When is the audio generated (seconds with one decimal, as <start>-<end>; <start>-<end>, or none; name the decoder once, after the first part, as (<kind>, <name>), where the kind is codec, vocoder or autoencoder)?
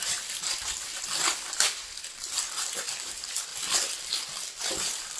0.0-0.9 (vocoder, BigVGAN v2); 2.7-3.5; 4.6-5.2